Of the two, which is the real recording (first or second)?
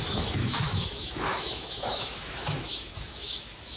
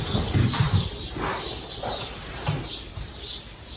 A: second